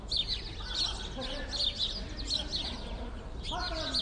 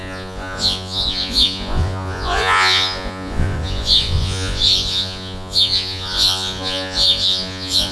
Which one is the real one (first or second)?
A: first